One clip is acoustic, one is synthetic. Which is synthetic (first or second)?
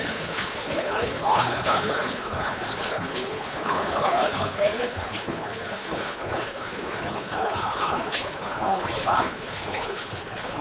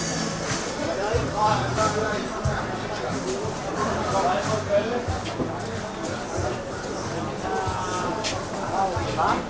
first